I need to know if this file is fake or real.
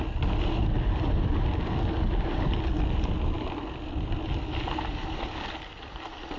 real